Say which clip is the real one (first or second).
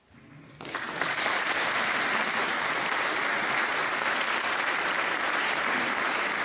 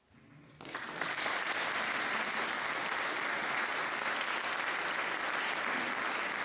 second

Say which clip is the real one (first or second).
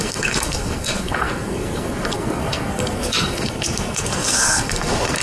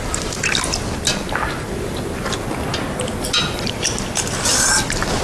second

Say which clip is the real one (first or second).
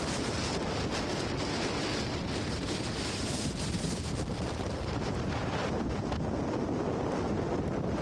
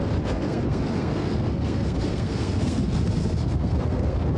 first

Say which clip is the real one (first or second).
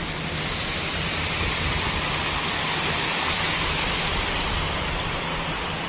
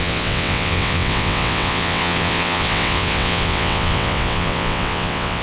first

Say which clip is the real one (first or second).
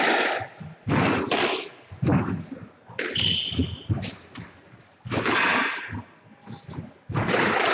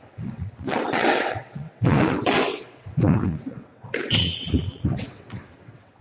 first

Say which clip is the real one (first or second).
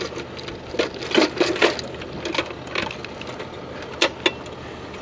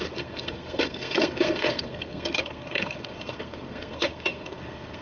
first